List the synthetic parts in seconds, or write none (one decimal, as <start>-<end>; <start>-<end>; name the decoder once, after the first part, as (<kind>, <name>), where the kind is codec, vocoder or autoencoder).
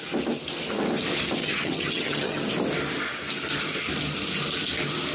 1.4-2.5 (vocoder, HiFi-GAN)